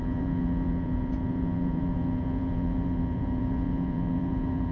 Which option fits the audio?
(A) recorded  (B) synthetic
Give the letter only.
B